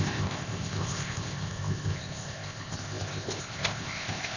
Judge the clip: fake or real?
fake